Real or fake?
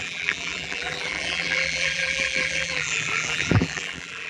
fake